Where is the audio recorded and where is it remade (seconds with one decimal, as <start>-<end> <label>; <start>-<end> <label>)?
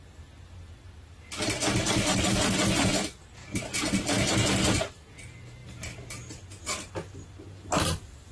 0.0-8.3 recorded